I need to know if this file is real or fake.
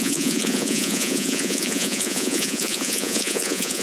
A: fake